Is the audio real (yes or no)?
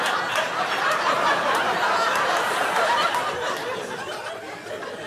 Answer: yes